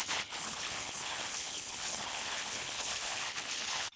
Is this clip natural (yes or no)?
no